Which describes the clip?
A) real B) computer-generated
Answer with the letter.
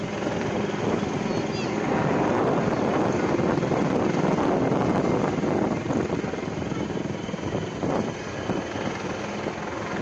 A